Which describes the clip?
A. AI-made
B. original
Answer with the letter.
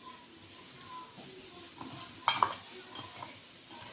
B